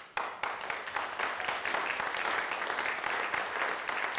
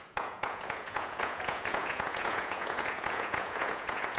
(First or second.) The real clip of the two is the first